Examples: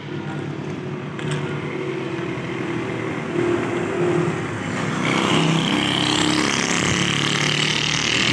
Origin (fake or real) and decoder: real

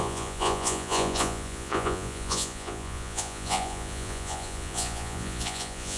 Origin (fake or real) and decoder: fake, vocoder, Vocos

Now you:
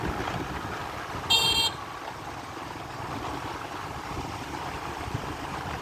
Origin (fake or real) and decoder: real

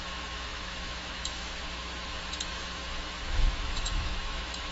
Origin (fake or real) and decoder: fake, autoencoder, DAC-VAE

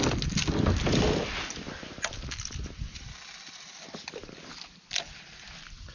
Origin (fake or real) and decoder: real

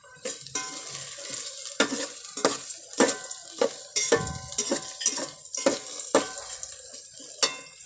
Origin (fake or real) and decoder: real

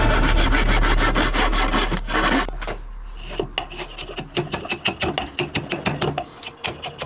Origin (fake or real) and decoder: real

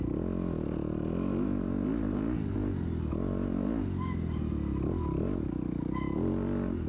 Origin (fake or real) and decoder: real